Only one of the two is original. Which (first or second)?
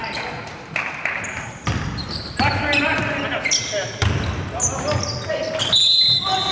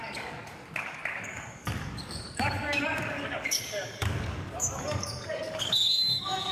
first